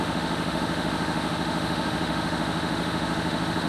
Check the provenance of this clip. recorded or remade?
remade